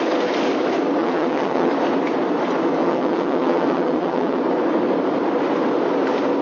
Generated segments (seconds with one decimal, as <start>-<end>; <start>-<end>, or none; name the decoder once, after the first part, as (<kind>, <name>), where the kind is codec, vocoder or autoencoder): 1.0-1.7 (vocoder, WaveNeXt); 2.8-4.4